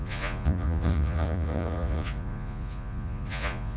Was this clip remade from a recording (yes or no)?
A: yes